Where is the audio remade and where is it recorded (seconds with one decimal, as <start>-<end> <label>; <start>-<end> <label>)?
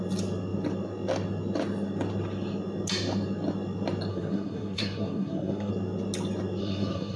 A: 0.0-4.1 recorded; 4.1-5.7 remade; 5.7-6.6 recorded; 6.6-7.2 remade